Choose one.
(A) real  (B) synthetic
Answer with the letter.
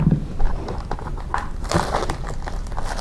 A